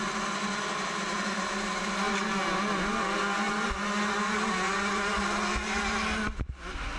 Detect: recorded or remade recorded